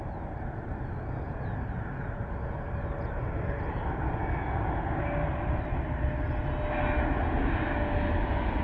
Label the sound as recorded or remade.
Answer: recorded